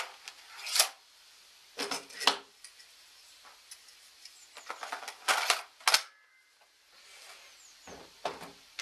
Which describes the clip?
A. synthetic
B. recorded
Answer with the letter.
B